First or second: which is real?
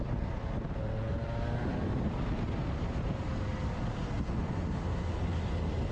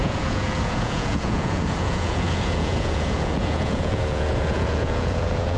first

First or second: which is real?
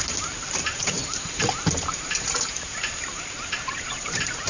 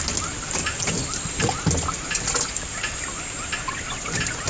second